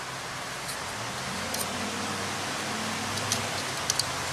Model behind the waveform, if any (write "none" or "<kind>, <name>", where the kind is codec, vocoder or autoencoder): none